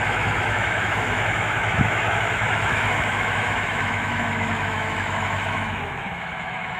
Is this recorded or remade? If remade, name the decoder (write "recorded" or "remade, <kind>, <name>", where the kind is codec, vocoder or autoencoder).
remade, autoencoder, DAC-VAE